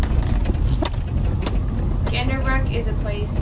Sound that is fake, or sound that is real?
real